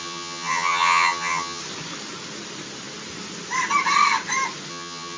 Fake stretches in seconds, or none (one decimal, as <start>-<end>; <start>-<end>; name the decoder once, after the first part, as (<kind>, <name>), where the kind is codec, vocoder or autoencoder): 0.0-1.6 (vocoder, HiFi-GAN); 4.7-5.2